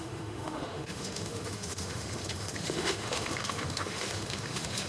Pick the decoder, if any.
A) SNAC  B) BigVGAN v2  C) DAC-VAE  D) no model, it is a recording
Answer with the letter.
C